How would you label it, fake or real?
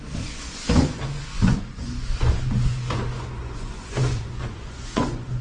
fake